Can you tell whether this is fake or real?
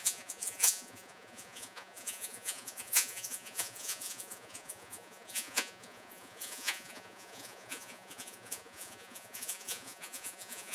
fake